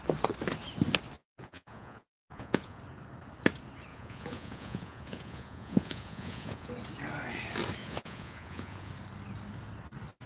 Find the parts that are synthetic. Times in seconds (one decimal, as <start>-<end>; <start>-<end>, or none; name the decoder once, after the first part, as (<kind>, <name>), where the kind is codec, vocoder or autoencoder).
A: 1.2-2.8 (vocoder, Vocos); 3.9-6.7; 7.8-8.9